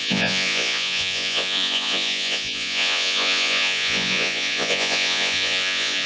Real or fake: fake